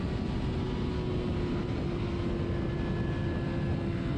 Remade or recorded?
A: recorded